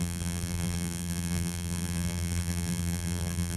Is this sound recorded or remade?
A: remade